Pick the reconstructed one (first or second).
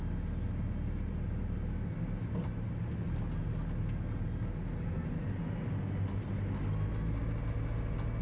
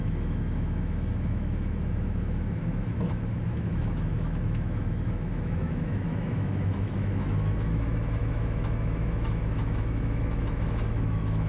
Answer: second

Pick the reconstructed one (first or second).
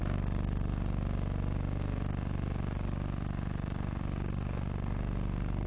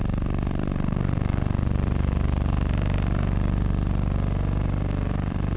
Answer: second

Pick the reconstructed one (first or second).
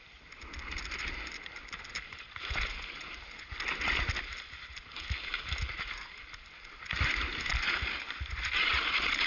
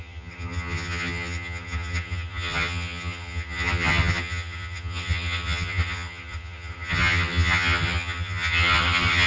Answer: second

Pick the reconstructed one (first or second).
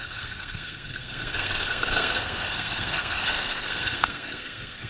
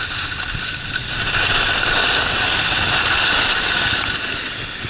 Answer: first